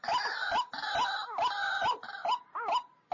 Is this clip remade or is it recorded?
recorded